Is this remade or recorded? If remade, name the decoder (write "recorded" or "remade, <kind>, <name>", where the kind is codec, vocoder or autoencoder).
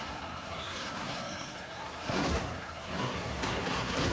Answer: remade, codec, SNAC